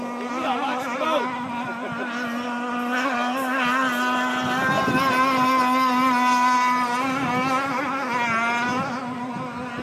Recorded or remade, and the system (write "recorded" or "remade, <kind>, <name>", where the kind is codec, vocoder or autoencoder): recorded